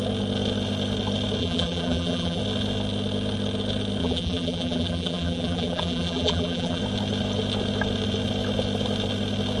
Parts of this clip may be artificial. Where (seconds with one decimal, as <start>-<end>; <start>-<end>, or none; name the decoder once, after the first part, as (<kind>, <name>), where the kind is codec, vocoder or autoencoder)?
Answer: 1.4-2.4 (vocoder, BigVGAN v2); 4.0-6.8

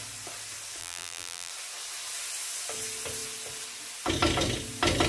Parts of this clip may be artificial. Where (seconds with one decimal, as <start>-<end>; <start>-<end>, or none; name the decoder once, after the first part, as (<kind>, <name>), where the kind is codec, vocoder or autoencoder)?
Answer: 0.8-1.5 (vocoder, BigVGAN v2)

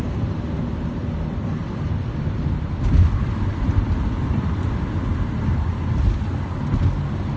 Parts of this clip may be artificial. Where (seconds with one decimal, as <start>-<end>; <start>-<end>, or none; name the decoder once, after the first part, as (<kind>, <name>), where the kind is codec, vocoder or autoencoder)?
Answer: 1.0-5.4 (vocoder, BigVGAN v2)

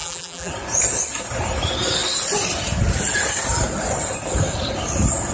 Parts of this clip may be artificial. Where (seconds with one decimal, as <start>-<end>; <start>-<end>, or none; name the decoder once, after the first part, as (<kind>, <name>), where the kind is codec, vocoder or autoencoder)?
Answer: 0.0-0.5 (vocoder, BigVGAN v2)

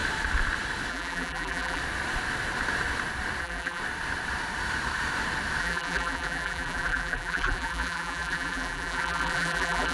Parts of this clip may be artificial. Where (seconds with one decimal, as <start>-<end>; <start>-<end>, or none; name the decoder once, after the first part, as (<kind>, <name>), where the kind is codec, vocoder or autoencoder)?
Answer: 0.9-1.8 (vocoder, BigVGAN v2); 3.4-3.8; 5.6-9.9

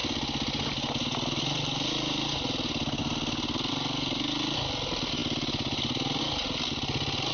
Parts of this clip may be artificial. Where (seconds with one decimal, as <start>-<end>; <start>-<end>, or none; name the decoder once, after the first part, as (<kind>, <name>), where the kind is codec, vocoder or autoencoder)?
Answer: none